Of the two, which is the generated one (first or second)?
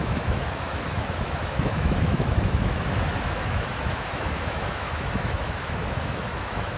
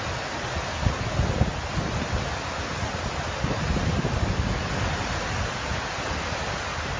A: first